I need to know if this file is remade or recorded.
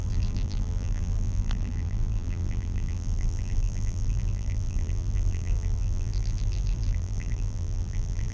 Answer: remade